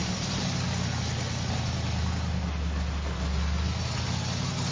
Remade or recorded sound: recorded